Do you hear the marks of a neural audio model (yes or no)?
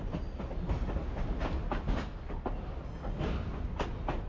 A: no